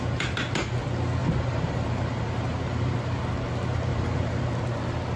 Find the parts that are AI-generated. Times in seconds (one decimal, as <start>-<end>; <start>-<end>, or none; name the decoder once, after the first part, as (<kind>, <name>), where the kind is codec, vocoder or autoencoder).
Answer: 1.2-3.2 (vocoder, BigVGAN v2); 3.9-4.4